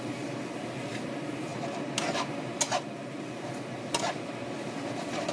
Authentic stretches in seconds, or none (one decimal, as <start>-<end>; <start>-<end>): 0.0-5.3